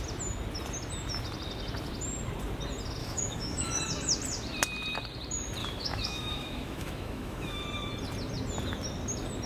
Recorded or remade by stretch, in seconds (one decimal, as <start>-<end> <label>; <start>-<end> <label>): 0.0-3.0 recorded; 3.0-3.8 remade; 3.8-5.6 recorded; 5.6-7.6 remade; 7.6-9.5 recorded